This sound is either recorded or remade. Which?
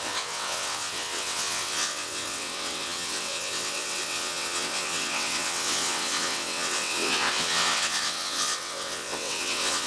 remade